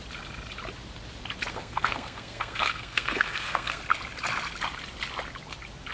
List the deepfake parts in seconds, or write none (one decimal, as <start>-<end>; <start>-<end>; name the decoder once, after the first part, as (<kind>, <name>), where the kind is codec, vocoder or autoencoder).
1.5-3.8 (codec, SNAC)

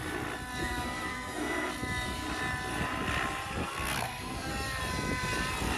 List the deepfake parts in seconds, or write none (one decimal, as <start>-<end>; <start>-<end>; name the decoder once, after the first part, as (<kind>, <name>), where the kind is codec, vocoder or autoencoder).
0.6-1.7 (codec, SNAC); 3.6-4.5

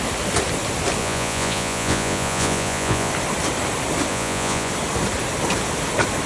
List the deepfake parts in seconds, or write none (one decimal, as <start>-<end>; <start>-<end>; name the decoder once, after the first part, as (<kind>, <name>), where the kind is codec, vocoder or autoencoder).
1.0-3.1 (vocoder, Vocos); 4.1-4.7

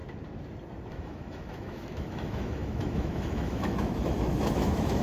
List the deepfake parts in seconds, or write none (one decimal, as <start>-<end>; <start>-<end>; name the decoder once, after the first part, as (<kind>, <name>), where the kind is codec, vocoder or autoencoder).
0.9-5.0 (autoencoder, DAC-VAE)

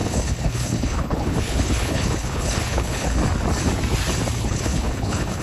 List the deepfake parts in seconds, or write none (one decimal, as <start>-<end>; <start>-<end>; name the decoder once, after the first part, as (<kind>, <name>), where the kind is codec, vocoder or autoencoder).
0.0-3.2 (codec, HILCodec); 4.4-5.4

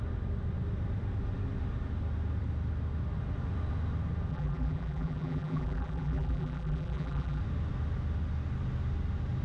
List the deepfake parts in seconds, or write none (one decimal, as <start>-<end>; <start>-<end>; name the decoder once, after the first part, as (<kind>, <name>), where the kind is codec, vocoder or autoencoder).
4.3-7.4 (vocoder, BigVGAN v2)